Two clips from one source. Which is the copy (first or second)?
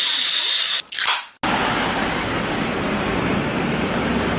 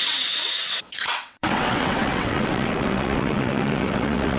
second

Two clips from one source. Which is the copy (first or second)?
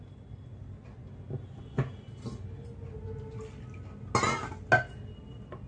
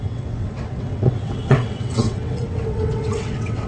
second